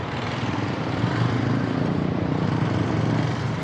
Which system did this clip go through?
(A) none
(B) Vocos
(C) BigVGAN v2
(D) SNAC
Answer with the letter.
C